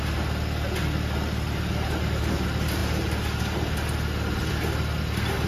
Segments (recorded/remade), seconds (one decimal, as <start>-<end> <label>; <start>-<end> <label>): 0.0-5.5 recorded